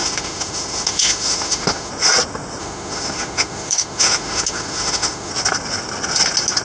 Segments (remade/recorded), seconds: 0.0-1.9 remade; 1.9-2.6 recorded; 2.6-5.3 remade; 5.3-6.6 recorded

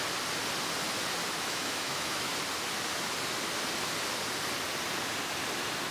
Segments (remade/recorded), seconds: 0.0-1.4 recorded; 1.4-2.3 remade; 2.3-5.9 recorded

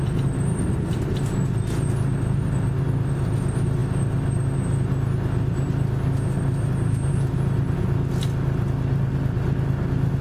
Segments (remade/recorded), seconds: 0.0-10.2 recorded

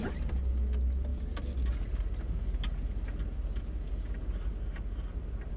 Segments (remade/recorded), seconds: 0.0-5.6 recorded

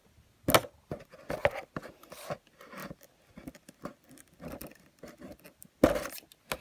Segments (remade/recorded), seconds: 0.0-6.6 recorded

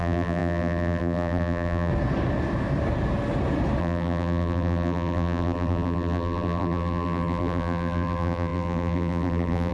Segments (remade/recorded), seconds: 0.0-1.9 remade; 1.9-3.8 recorded; 3.8-9.7 remade

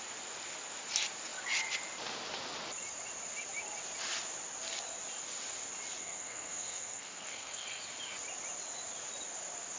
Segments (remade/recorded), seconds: 0.0-6.0 recorded; 6.0-7.8 remade; 7.8-9.8 recorded

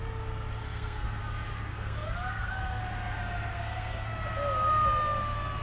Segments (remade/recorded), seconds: 0.0-0.6 recorded; 0.6-1.2 remade; 1.2-1.7 recorded; 1.7-2.8 remade; 2.8-3.5 recorded; 3.5-4.1 remade; 4.1-5.6 recorded